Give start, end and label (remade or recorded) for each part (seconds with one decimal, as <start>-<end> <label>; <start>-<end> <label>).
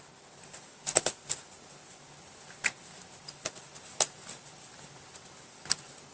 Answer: 0.0-6.1 recorded